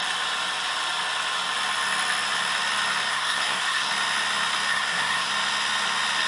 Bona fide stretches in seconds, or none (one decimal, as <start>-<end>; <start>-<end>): 0.0-3.1; 3.9-4.7; 5.3-6.3